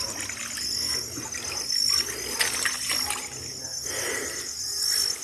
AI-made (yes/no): no